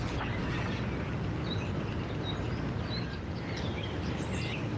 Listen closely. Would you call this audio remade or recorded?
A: recorded